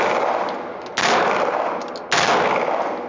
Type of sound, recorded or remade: recorded